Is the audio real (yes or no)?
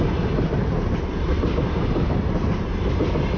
no